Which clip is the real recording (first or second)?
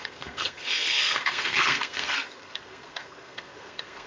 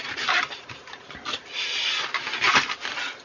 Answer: second